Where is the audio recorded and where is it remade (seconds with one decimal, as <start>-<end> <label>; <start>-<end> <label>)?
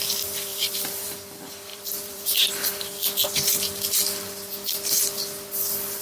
0.0-0.5 recorded; 0.5-1.1 remade; 1.1-1.7 recorded; 1.7-2.5 remade; 2.5-6.0 recorded